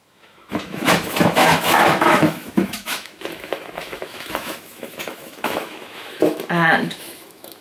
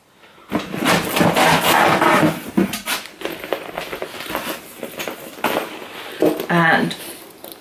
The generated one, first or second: first